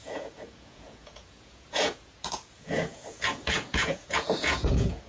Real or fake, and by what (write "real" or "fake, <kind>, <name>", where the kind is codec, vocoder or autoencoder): fake, vocoder, Vocos